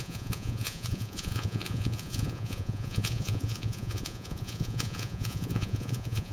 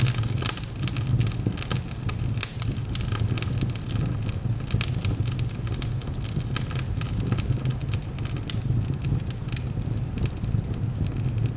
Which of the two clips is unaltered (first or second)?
second